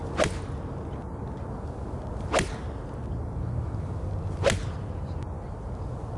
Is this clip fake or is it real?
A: real